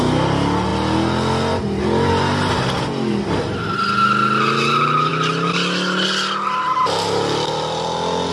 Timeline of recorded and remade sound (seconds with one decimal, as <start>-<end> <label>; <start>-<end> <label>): 0.0-8.3 recorded